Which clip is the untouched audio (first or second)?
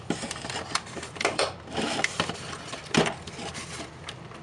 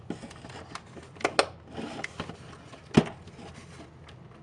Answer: second